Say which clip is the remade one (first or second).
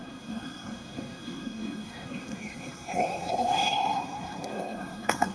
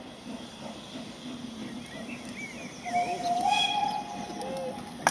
first